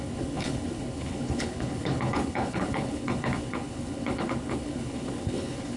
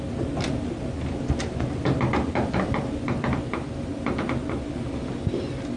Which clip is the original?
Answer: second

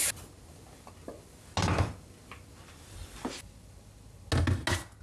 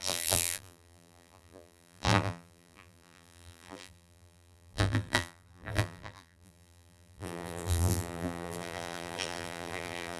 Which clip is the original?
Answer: first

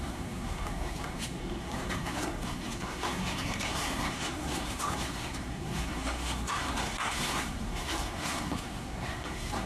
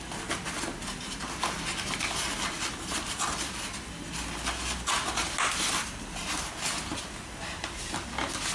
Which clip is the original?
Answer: second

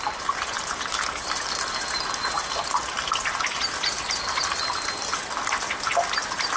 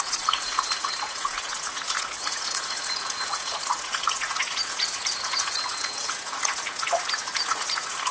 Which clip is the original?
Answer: first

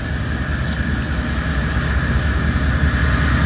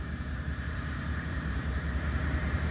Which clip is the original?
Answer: first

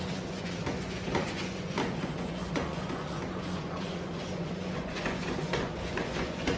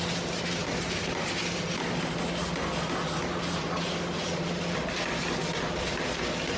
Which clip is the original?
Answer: second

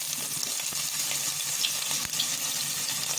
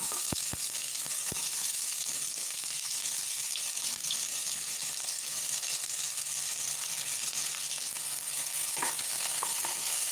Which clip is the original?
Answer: first